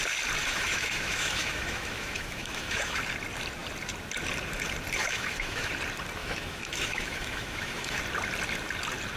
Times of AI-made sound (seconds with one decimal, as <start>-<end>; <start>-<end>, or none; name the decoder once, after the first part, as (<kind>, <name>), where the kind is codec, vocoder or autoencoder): 0.4-3.0 (autoencoder, DAC-VAE); 5.0-5.7; 6.2-8.0